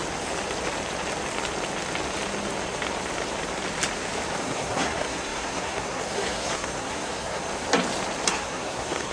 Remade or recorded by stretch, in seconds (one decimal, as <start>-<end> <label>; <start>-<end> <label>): 0.0-4.4 recorded; 4.4-7.4 remade; 7.4-8.3 recorded; 8.3-9.1 remade